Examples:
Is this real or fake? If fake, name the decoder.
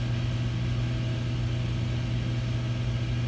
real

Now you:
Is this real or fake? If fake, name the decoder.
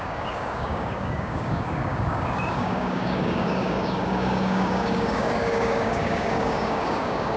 fake, codec, DAC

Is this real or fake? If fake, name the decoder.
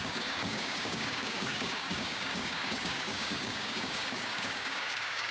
fake, codec, DAC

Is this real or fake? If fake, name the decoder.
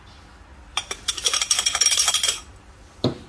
real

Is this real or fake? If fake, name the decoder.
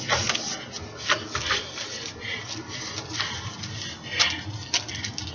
real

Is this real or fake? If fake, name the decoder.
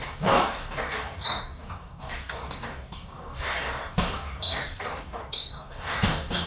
fake, codec, DAC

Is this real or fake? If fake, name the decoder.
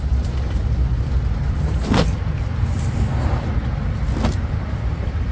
real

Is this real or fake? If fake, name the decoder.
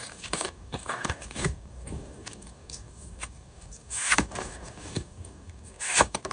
fake, codec, DAC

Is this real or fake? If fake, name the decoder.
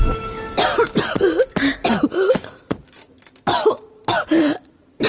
real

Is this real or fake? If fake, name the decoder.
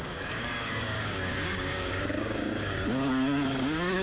fake, codec, DAC